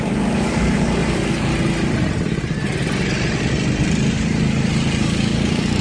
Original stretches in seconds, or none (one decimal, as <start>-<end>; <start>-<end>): 1.5-5.0